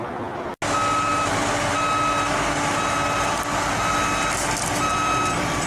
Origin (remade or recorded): recorded